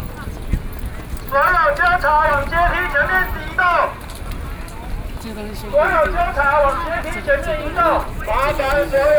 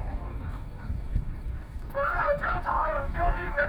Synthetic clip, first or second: second